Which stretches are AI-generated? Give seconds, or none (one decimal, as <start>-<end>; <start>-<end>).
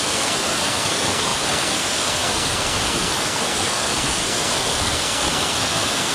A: 0.0-6.1